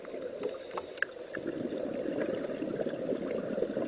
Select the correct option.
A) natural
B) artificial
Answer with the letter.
A